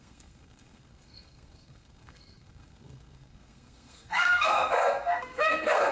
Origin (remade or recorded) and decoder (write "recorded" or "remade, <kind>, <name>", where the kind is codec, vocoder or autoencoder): remade, codec, SNAC